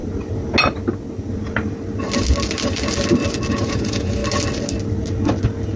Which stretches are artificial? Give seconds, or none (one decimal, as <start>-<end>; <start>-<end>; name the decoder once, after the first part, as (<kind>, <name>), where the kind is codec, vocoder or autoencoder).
3.5-4.2 (vocoder, Vocos)